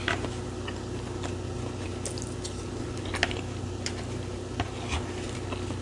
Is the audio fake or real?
real